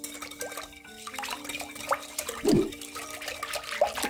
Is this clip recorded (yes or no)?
yes